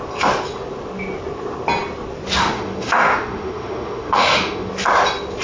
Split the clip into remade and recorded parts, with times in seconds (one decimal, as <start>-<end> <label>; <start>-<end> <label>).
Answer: 0.0-2.4 recorded; 2.4-4.7 remade; 4.7-5.4 recorded